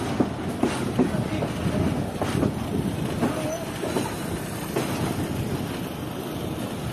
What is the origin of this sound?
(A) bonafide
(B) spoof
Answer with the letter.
A